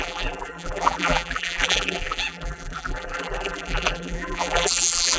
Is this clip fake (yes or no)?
yes